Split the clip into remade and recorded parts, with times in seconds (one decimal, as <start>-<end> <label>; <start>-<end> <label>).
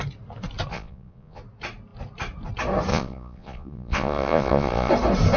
0.0-0.7 recorded; 0.7-1.4 remade; 1.4-2.9 recorded; 2.9-4.9 remade; 4.9-5.4 recorded